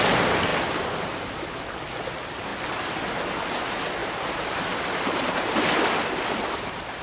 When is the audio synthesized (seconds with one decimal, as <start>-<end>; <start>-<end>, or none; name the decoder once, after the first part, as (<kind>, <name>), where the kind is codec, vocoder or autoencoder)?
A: 0.5-1.5 (vocoder, BigVGAN v2); 4.0-5.3